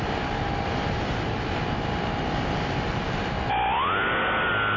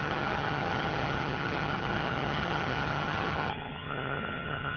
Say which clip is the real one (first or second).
first